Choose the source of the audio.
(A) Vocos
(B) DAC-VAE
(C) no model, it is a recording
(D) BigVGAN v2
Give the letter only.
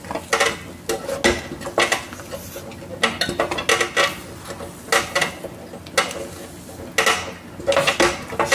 C